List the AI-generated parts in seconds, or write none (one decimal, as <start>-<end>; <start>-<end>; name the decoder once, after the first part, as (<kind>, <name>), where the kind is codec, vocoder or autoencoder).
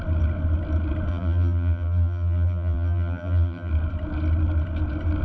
1.1-3.7 (vocoder, BigVGAN v2)